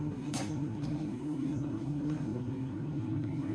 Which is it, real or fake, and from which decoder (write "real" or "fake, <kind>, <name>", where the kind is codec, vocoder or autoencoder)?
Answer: fake, codec, SNAC